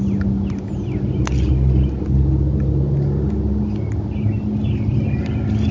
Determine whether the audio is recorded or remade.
recorded